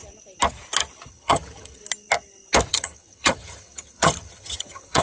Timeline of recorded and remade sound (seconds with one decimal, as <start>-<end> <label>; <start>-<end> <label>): 0.0-1.1 recorded; 1.1-1.8 remade; 1.8-2.7 recorded; 2.7-5.0 remade